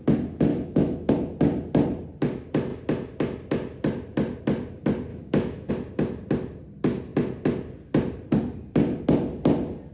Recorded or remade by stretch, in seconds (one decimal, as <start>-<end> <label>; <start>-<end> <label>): 0.0-0.5 recorded; 0.5-1.1 remade; 1.1-5.1 recorded; 5.1-5.7 remade; 5.7-9.9 recorded